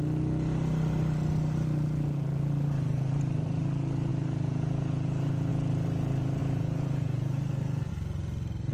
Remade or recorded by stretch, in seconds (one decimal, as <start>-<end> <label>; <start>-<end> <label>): 0.0-4.1 recorded; 4.1-5.5 remade; 5.5-6.4 recorded; 6.4-7.9 remade; 7.9-8.7 recorded